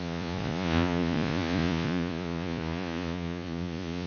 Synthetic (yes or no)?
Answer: yes